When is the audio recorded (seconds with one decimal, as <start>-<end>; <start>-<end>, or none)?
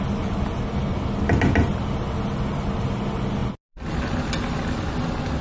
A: 0.0-5.4